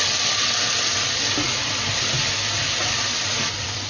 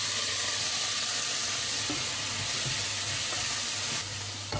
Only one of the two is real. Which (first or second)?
second